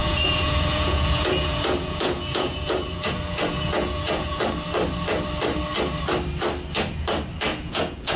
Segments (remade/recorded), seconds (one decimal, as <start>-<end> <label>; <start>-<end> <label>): 0.0-4.4 remade; 4.4-7.5 recorded; 7.5-8.2 remade